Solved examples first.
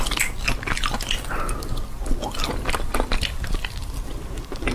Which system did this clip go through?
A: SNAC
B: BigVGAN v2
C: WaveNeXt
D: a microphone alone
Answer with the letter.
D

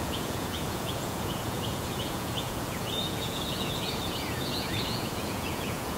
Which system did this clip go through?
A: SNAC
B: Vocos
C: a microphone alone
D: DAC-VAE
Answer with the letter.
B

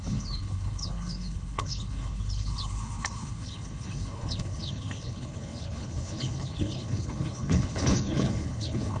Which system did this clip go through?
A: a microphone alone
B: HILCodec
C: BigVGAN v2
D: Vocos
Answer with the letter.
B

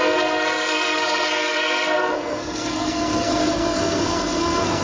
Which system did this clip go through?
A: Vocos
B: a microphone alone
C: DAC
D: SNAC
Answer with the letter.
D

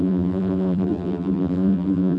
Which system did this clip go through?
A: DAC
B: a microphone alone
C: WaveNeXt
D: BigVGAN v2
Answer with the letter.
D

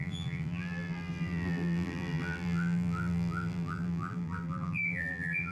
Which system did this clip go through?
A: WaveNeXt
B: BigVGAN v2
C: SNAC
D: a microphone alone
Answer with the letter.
B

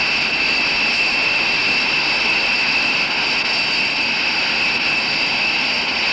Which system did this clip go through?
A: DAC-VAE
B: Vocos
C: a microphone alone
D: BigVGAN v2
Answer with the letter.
C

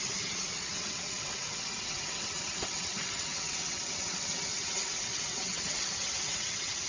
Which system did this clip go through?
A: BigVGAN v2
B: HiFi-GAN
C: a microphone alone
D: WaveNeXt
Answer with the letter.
D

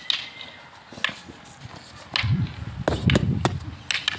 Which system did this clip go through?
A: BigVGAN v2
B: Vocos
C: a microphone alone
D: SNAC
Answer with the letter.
C